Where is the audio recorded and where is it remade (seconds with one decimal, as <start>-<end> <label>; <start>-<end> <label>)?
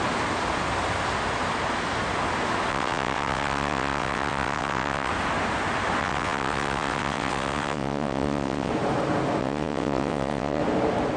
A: 0.0-2.7 recorded; 2.7-5.1 remade; 5.1-6.0 recorded; 6.0-8.7 remade; 8.7-9.4 recorded; 9.4-10.6 remade; 10.6-11.2 recorded